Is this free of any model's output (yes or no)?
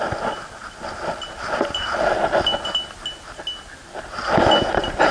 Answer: yes